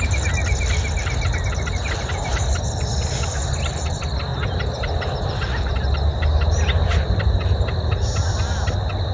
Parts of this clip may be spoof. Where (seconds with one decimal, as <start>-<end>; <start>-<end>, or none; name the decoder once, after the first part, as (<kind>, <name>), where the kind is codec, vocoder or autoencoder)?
none